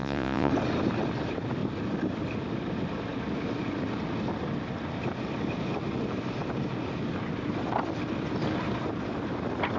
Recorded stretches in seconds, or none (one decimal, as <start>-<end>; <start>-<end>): 0.5-9.8